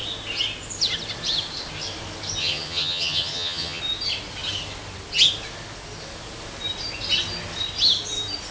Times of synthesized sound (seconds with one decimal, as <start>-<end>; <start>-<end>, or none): 2.4-3.8